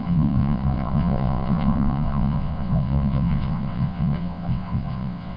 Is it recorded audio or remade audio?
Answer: remade